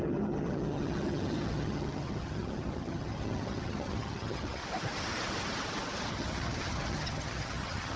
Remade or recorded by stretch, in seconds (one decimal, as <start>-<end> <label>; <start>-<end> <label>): 0.0-4.6 remade; 4.6-6.1 recorded; 6.1-8.0 remade